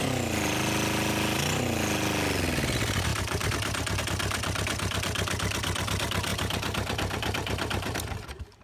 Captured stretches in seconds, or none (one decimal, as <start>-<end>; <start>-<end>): 0.0-3.1; 4.0-6.3